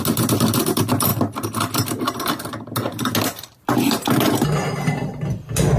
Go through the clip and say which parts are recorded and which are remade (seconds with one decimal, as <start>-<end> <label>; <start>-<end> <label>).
0.0-5.8 recorded